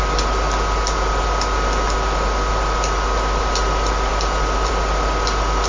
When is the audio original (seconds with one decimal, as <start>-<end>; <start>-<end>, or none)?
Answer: 0.0-5.7